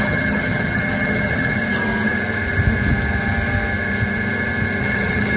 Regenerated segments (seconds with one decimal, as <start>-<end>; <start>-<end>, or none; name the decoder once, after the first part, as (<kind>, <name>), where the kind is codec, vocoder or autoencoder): 0.0-1.6 (vocoder, HiFi-GAN); 4.8-5.4